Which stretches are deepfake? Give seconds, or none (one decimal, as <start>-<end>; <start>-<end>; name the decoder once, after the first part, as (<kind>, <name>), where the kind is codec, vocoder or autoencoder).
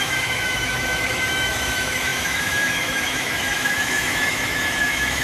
0.0-5.2 (autoencoder, DAC-VAE)